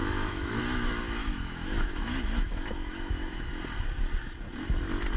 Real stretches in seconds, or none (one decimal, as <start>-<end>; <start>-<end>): 0.6-1.2; 3.5-5.2